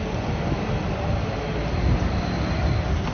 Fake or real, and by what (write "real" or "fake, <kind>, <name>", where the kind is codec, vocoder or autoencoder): real